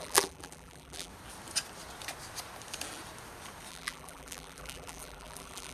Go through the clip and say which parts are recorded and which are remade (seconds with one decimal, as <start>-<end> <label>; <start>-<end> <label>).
0.0-1.1 remade; 1.1-3.7 recorded; 3.7-5.7 remade